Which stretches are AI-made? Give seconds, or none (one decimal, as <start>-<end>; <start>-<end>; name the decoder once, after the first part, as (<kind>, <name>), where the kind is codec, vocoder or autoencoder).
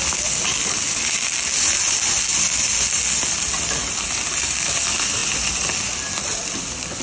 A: none